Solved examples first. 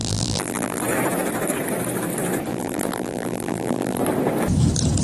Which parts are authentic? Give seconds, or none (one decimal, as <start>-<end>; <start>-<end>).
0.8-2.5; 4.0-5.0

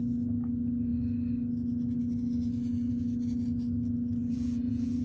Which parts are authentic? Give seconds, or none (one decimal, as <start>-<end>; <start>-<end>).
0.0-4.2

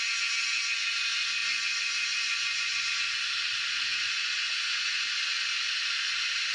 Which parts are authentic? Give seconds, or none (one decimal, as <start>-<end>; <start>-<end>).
0.0-1.4; 2.9-3.9; 5.2-6.5